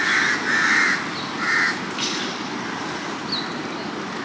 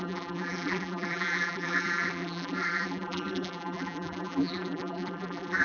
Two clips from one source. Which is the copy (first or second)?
second